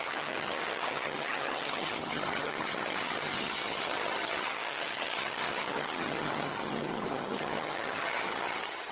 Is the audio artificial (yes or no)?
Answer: yes